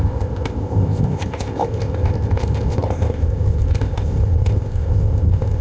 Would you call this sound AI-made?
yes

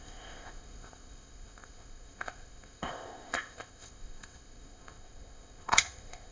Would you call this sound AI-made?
yes